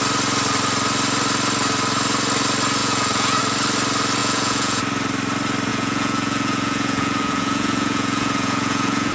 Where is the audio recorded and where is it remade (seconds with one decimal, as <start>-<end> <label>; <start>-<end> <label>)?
0.0-2.8 recorded; 2.8-3.4 remade; 3.4-4.2 recorded; 4.2-4.8 remade; 4.8-5.7 recorded; 5.7-9.1 remade